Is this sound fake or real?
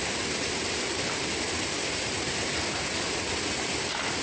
real